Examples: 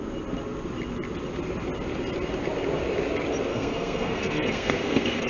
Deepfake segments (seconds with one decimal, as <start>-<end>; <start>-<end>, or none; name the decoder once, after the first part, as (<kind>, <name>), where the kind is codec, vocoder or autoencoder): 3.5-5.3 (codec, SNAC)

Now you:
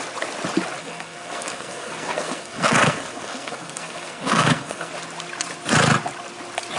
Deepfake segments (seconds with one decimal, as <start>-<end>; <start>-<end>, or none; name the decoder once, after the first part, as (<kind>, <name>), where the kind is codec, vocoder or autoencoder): 0.8-4.9 (codec, SNAC)

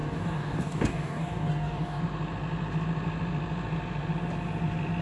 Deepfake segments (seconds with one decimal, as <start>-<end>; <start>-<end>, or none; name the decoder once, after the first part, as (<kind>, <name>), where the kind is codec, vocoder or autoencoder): 0.0-2.0 (codec, DAC)